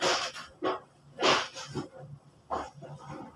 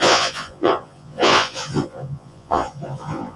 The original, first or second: first